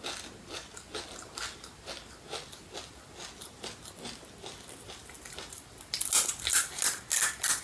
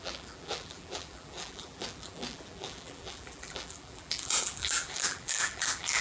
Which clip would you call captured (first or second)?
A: first